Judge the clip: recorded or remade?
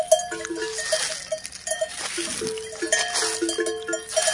recorded